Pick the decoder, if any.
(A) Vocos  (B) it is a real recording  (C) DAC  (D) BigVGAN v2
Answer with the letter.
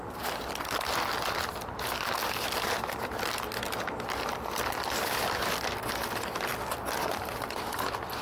B